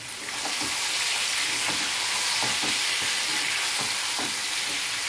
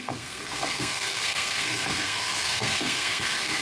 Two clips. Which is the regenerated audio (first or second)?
second